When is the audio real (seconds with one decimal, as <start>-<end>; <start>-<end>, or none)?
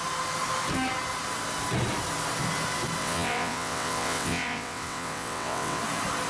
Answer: 0.0-3.0; 5.8-6.3